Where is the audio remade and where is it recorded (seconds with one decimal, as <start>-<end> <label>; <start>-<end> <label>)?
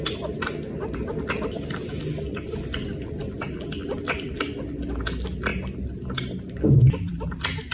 0.0-7.7 recorded